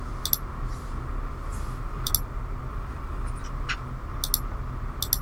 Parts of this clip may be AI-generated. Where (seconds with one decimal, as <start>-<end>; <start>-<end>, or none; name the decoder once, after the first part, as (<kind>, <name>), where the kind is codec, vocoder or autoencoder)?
1.5-2.1 (vocoder, BigVGAN v2); 2.7-3.5